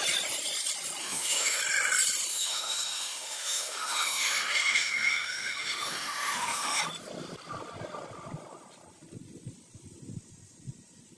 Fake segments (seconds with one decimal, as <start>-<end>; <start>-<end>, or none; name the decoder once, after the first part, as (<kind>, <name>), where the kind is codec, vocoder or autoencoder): 1.0-1.6 (autoencoder, DAC-VAE); 2.3-6.8